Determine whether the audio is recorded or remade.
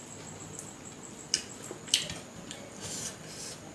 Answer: recorded